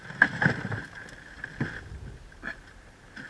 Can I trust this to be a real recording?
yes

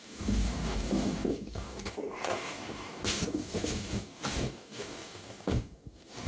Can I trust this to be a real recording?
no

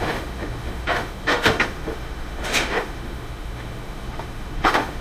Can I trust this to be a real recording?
no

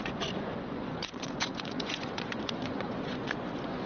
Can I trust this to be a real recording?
no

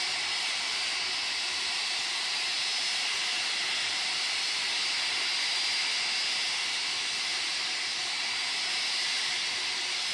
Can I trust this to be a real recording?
yes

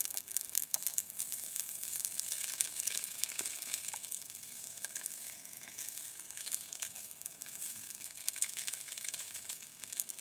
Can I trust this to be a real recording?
no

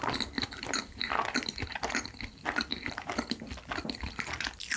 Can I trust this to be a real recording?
no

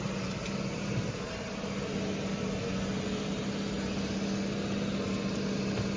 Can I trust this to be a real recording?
yes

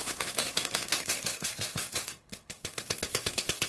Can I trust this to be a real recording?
no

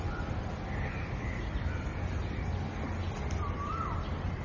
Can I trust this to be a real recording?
yes